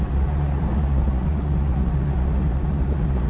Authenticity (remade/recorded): remade